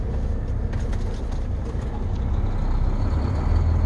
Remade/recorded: recorded